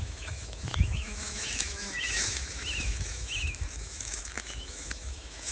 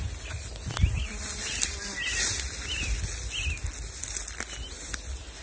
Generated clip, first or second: first